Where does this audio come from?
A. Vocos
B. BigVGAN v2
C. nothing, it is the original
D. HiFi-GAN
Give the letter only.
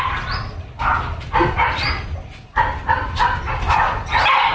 C